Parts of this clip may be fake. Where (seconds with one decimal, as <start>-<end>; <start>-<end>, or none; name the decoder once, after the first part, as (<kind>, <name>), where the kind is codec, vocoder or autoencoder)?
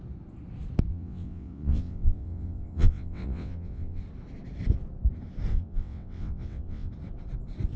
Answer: 0.9-4.0 (vocoder, WaveNeXt); 5.5-6.9